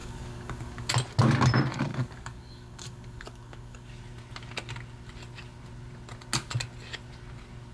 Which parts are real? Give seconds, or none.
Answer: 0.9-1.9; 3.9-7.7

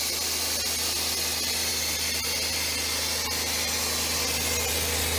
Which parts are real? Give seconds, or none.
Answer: 0.0-5.2

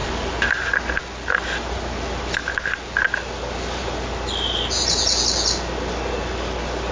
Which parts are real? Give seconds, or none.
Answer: 0.0-6.9

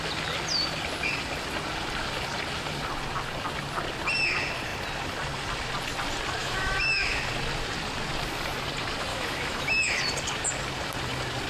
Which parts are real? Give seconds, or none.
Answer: 0.0-6.4; 7.2-9.1; 10.0-11.5